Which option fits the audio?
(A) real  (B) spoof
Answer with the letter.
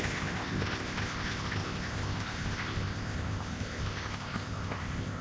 B